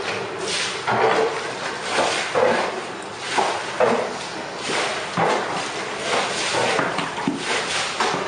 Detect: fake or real real